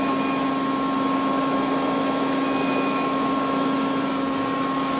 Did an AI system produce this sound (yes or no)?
no